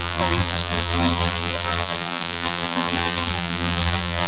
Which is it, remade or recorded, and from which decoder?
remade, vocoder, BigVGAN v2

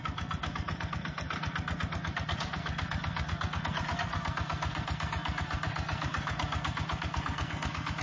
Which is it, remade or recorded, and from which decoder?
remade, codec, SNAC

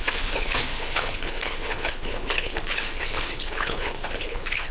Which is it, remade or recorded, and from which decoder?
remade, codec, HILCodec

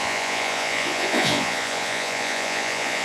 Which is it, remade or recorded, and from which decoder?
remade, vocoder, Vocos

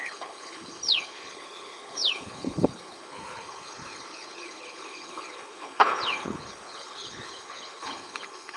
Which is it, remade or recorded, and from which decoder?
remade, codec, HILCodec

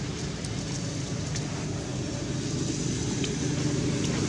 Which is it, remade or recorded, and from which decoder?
recorded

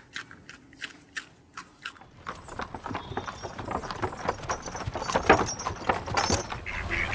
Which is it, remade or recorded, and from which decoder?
recorded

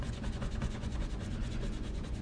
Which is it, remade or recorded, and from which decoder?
remade, vocoder, Vocos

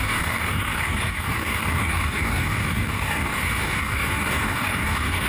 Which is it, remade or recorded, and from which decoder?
remade, codec, DAC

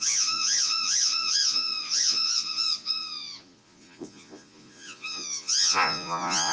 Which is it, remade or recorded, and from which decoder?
remade, vocoder, Vocos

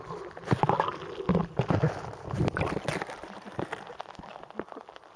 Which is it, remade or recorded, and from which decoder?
recorded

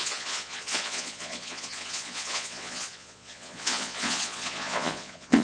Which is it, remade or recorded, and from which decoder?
remade, vocoder, Vocos